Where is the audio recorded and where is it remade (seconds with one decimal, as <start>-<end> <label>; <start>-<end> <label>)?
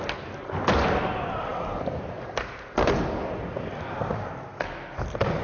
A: 0.0-5.4 recorded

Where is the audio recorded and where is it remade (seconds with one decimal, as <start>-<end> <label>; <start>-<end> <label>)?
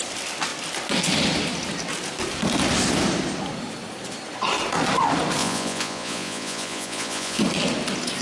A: 0.0-5.4 recorded; 5.4-7.4 remade; 7.4-8.2 recorded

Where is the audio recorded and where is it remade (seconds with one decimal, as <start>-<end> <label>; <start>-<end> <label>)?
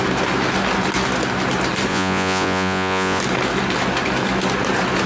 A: 0.0-1.9 recorded; 1.9-3.2 remade; 3.2-5.1 recorded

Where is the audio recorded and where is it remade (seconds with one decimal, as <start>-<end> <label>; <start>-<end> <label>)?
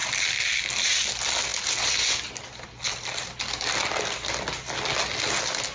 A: 0.0-5.7 recorded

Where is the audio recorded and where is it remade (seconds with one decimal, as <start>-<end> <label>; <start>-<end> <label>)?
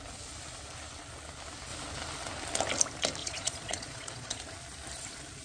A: 0.0-3.2 recorded; 3.2-4.4 remade; 4.4-5.4 recorded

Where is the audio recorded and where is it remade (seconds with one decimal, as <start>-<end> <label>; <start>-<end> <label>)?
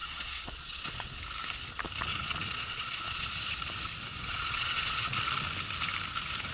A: 0.0-1.2 remade; 1.2-2.1 recorded; 2.1-3.6 remade; 3.6-4.1 recorded; 4.1-5.2 remade; 5.2-6.5 recorded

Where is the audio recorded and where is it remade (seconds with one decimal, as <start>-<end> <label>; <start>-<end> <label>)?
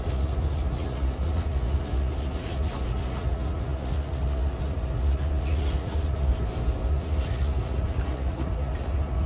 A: 0.0-6.3 remade; 6.3-6.9 recorded; 6.9-9.3 remade